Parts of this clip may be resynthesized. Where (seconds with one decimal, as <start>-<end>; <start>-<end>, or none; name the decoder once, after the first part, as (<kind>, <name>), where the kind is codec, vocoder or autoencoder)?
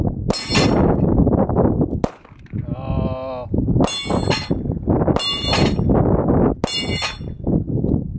none